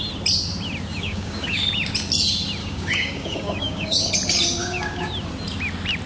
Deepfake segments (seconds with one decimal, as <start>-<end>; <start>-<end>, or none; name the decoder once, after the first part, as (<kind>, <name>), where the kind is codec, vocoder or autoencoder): 0.9-1.6 (codec, DAC); 2.6-4.1; 4.6-5.1